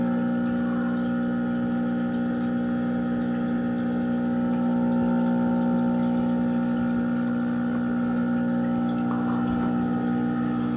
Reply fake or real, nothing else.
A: real